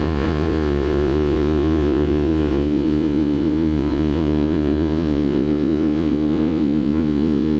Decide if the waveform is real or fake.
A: fake